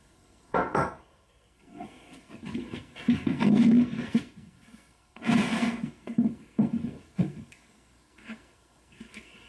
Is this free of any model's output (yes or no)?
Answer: no